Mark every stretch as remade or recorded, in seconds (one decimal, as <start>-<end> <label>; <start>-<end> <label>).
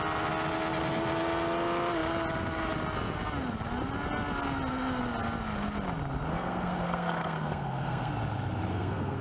0.0-6.3 recorded; 6.3-8.1 remade; 8.1-8.7 recorded; 8.7-9.2 remade